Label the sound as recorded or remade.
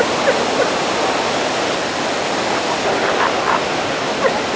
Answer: recorded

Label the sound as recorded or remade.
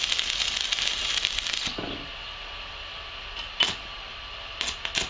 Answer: recorded